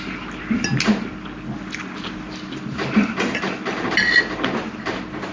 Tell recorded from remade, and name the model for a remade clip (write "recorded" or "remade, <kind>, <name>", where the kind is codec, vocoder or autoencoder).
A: recorded